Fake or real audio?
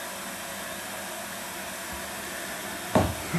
real